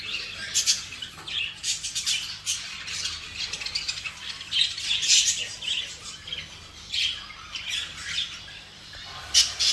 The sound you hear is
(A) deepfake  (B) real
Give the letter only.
B